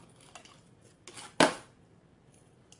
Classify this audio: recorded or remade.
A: recorded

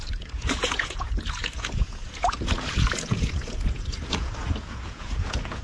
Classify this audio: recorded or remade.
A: remade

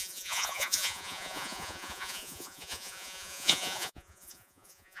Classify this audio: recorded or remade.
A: remade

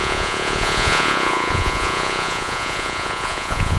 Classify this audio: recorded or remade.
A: remade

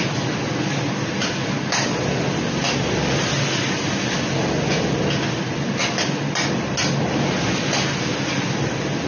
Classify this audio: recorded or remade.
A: recorded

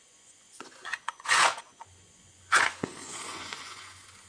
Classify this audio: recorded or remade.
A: remade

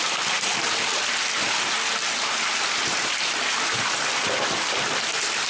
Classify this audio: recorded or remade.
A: recorded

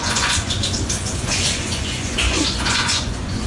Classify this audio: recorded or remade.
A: remade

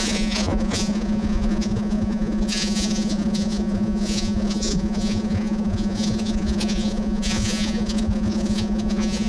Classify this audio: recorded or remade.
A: remade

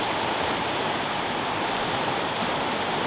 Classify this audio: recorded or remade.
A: recorded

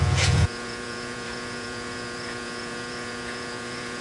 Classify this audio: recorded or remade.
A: remade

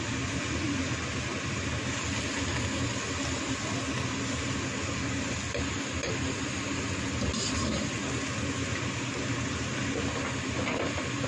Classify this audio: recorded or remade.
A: recorded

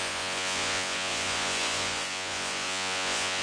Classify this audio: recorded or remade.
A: remade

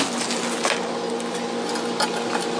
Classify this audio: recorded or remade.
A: recorded